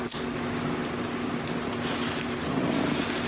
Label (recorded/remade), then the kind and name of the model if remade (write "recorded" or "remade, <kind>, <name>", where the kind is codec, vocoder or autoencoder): recorded